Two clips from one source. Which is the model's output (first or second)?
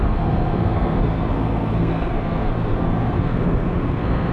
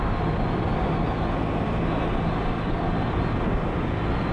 first